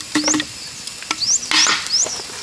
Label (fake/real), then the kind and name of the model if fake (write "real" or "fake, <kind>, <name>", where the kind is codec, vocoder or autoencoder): real